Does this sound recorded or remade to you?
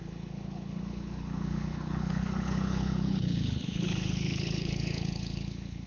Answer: remade